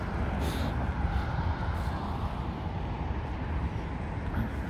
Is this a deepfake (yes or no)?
no